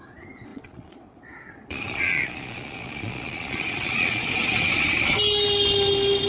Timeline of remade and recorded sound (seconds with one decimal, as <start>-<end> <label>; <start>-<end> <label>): 0.0-0.5 recorded; 0.5-4.3 remade; 4.3-6.3 recorded